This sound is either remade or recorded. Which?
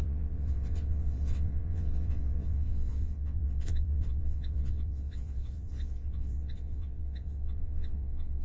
remade